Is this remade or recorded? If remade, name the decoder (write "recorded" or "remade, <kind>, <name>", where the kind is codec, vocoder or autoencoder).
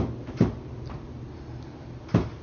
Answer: recorded